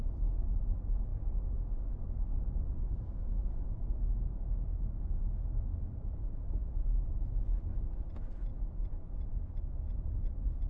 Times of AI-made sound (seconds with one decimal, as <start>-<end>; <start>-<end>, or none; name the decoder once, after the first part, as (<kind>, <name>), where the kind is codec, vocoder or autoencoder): 5.7-7.2 (vocoder, BigVGAN v2)